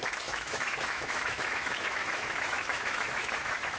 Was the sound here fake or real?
fake